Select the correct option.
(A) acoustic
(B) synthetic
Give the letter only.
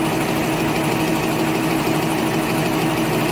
A